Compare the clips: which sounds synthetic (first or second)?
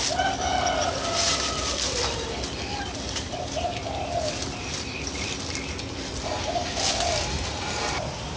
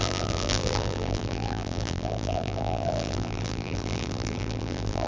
second